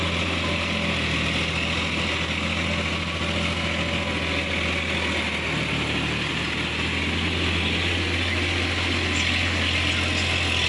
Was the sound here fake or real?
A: real